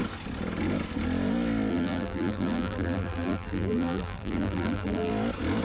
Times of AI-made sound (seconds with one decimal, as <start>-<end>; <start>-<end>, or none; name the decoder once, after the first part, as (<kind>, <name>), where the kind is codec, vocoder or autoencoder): 1.7-5.1 (vocoder, BigVGAN v2)